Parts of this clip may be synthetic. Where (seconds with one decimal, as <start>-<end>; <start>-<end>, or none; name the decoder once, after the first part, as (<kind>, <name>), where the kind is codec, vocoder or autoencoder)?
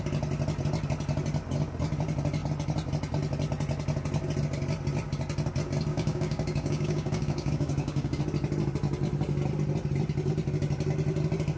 5.9-8.2 (codec, DAC)